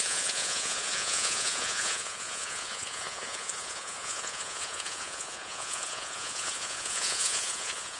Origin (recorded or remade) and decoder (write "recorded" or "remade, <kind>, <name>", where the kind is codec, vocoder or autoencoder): remade, vocoder, Vocos